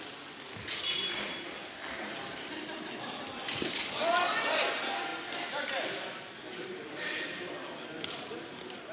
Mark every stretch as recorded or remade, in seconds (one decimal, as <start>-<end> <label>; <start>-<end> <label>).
0.0-8.9 recorded